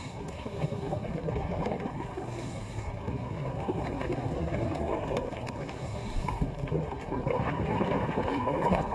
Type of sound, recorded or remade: remade